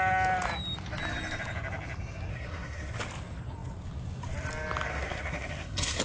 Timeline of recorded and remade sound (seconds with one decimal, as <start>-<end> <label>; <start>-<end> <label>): 0.0-2.3 recorded; 2.3-2.9 remade; 2.9-4.9 recorded; 4.9-6.0 remade